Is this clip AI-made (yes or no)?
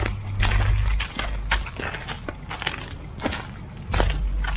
no